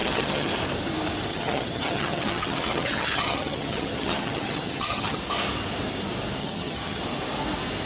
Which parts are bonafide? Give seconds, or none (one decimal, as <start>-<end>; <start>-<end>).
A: 0.5-1.3; 5.2-6.4; 7.0-7.8

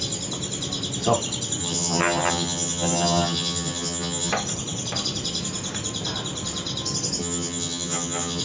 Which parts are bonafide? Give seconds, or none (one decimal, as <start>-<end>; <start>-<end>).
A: 0.0-1.6; 4.3-7.2

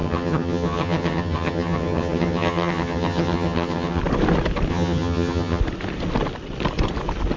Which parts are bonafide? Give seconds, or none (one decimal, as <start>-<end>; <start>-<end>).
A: 4.0-4.7; 5.6-7.4

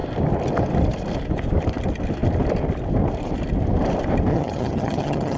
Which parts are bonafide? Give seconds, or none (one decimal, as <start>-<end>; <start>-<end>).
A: 0.0-4.3

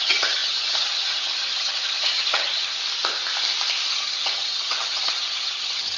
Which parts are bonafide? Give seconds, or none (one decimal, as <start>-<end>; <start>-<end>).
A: 2.8-3.9

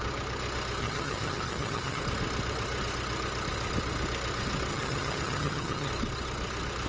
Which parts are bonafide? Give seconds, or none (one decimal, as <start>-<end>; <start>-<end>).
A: 0.0-0.8; 2.0-4.7; 5.9-6.9

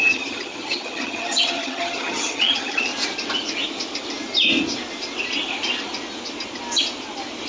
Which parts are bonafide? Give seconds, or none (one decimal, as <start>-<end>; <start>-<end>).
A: 2.9-7.5

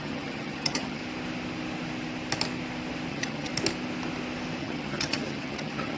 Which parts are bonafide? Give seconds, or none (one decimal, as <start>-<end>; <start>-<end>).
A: 1.0-3.1; 3.5-4.6